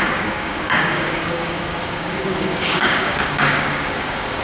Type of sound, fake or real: fake